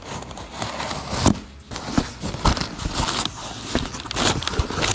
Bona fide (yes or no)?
yes